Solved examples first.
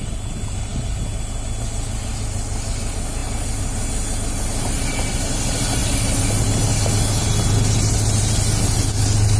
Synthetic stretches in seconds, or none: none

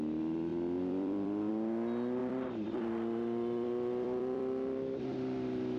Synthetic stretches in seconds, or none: 0.5-1.5 (vocoder, BigVGAN v2); 2.2-5.8

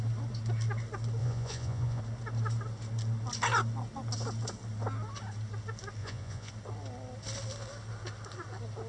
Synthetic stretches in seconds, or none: 1.2-2.0 (vocoder, Vocos); 6.0-6.5

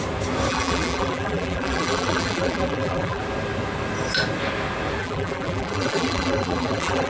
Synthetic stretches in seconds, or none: 0.5-3.2 (vocoder, BigVGAN v2); 5.0-7.1

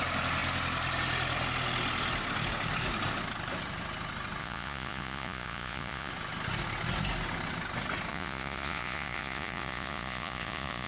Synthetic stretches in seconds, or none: 4.4-6.1 (vocoder, Vocos); 8.1-10.9